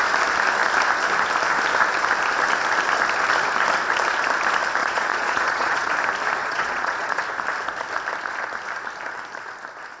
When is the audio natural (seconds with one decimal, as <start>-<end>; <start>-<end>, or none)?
0.0-4.8; 5.9-6.4; 7.2-10.0